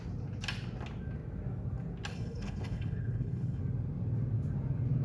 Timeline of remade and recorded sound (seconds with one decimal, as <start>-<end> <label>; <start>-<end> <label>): 0.0-2.1 recorded; 2.1-3.6 remade; 3.6-5.0 recorded

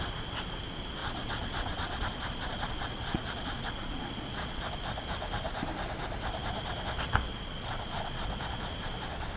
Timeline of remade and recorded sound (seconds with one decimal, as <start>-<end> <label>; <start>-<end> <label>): 0.0-1.0 recorded; 1.0-4.6 remade; 4.6-7.3 recorded; 7.3-8.7 remade; 8.7-9.4 recorded

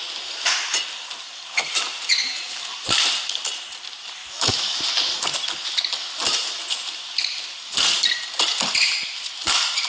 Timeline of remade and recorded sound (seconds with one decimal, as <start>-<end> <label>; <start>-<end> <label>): 0.0-4.2 recorded; 4.2-4.8 remade; 4.8-9.9 recorded

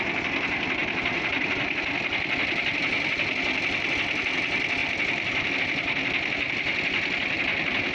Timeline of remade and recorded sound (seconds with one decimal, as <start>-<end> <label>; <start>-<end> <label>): 0.0-4.8 recorded; 4.8-5.6 remade; 5.6-7.9 recorded

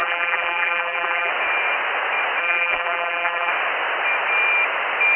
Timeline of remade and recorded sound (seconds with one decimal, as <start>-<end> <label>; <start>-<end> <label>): 0.0-1.3 remade; 1.3-2.4 recorded; 2.4-3.5 remade; 3.5-5.2 recorded

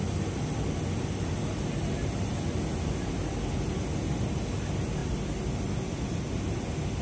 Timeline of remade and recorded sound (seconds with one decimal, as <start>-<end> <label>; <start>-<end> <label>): 0.0-7.0 recorded

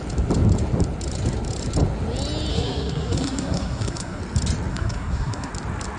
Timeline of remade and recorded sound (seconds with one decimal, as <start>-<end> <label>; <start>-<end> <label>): 0.0-2.5 recorded; 2.5-4.2 remade; 4.2-4.7 recorded; 4.7-5.5 remade; 5.5-6.0 recorded